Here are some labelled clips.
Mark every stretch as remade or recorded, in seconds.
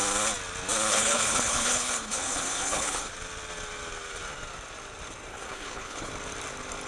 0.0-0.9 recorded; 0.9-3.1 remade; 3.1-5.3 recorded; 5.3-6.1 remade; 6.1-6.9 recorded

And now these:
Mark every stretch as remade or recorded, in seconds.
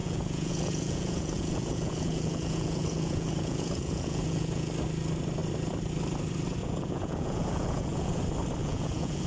0.0-4.7 remade; 4.7-6.6 recorded; 6.6-8.2 remade; 8.2-8.6 recorded; 8.6-9.3 remade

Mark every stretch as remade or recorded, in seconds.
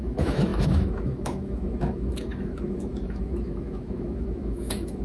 0.0-5.0 remade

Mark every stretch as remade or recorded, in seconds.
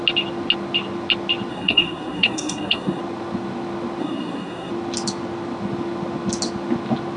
0.0-1.5 recorded; 1.5-3.0 remade; 3.0-4.0 recorded; 4.0-4.7 remade; 4.7-7.2 recorded